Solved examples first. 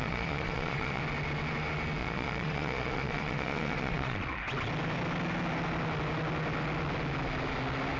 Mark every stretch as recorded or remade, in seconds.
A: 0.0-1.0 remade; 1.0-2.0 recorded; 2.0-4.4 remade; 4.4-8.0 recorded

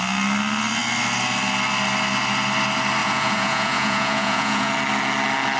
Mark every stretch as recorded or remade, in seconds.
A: 0.0-3.0 recorded; 3.0-4.7 remade; 4.7-5.6 recorded

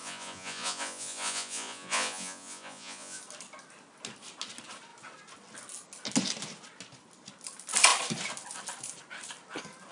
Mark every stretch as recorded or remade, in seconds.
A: 0.0-3.2 remade; 3.2-9.9 recorded

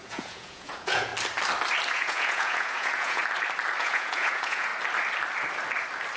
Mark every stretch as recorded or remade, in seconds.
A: 0.0-1.1 remade; 1.1-1.9 recorded; 1.9-3.2 remade; 3.2-3.8 recorded; 3.8-4.7 remade; 4.7-6.2 recorded